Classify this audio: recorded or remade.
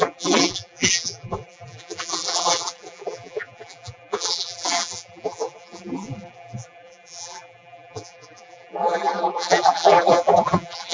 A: remade